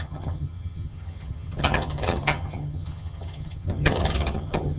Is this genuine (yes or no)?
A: no